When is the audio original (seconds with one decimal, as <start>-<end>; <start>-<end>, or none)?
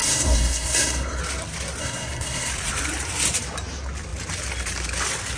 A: 1.2-1.8; 2.5-5.4